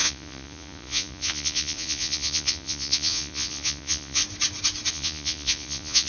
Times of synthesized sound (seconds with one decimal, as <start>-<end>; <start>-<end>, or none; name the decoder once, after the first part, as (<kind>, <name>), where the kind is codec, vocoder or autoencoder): 0.0-4.2 (vocoder, Vocos); 4.9-6.1